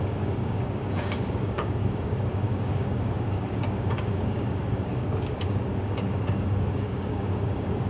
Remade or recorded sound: remade